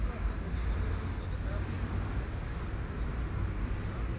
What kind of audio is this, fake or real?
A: real